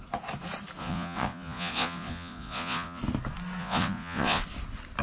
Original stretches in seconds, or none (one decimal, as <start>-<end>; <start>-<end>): 0.0-0.8; 3.0-3.6; 4.4-5.0